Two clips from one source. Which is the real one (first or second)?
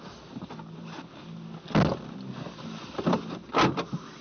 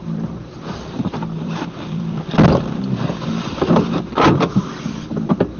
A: first